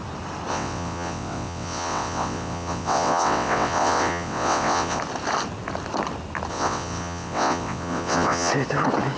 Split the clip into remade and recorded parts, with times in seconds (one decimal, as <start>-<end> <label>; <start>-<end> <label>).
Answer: 0.0-0.5 recorded; 0.5-5.0 remade; 5.0-6.5 recorded; 6.5-8.5 remade; 8.5-9.2 recorded